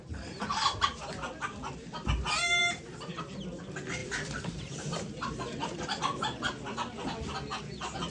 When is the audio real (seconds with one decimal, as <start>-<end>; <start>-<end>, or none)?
1.0-2.6; 3.2-4.0; 4.9-5.6; 6.5-8.1

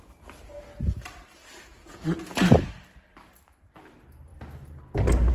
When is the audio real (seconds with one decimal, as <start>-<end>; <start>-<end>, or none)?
0.0-5.3

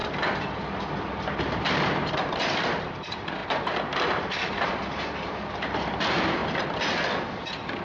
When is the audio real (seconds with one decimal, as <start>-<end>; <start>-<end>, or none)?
0.0-1.7; 6.4-7.8

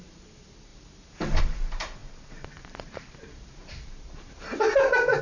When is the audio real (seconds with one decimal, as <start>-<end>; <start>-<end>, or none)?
none

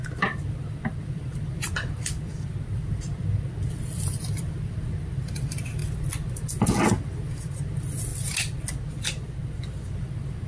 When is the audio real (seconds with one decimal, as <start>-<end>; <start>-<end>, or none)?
5.8-7.4; 8.1-10.0

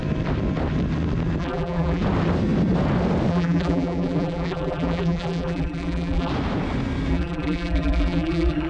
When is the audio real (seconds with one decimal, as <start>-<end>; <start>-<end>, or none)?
0.0-1.4; 2.0-3.3; 6.3-7.1

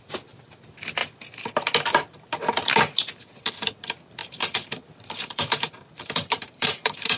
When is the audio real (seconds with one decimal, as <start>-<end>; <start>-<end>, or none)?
0.0-4.2